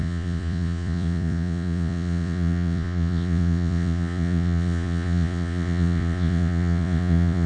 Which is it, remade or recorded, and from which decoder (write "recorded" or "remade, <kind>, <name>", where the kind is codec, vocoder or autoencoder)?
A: remade, vocoder, Vocos